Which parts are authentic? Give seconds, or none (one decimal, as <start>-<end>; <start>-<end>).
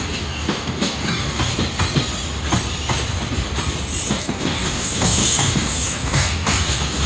1.5-4.2